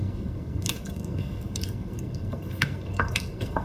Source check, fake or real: fake